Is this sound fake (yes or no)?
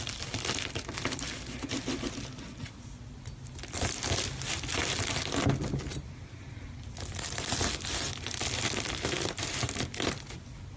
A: no